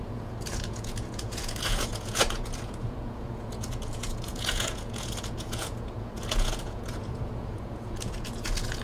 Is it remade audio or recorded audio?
remade